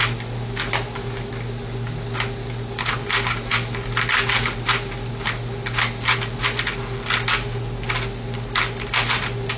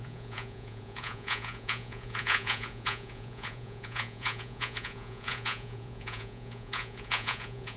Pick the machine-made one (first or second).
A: second